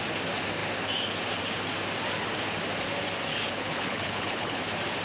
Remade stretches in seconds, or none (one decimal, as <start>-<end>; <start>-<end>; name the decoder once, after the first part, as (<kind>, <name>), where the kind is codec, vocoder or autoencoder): 3.3-4.6 (codec, HILCodec)